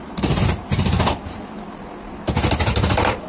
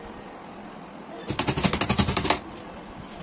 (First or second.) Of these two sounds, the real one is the second